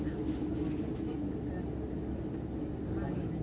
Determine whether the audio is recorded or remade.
recorded